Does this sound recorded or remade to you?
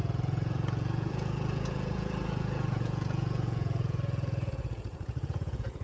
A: remade